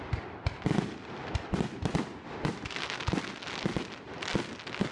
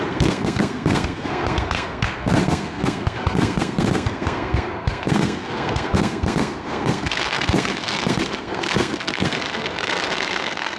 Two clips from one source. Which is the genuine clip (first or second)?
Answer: first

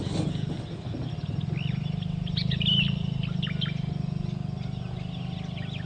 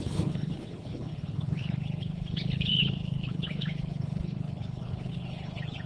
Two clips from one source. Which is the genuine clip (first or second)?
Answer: first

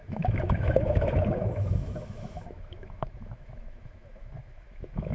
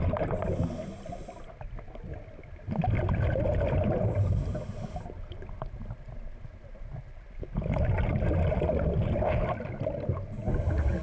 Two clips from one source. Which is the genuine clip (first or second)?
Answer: second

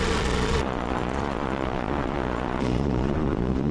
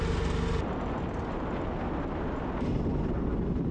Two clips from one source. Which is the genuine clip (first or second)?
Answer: second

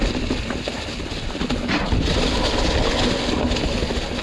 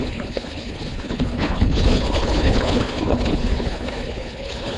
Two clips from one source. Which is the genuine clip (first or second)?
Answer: first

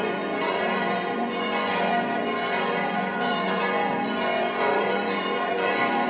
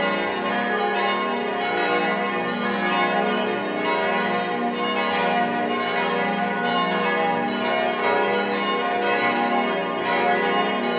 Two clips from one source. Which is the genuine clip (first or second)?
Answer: second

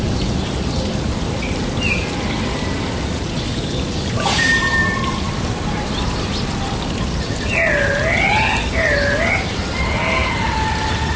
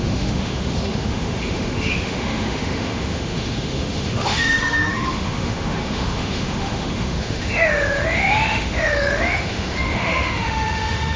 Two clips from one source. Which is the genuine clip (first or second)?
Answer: first